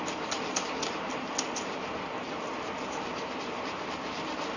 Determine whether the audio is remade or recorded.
recorded